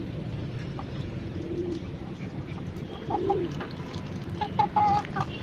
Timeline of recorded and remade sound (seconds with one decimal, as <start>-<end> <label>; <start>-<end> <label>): 0.0-0.4 recorded; 0.4-3.6 remade; 3.6-5.4 recorded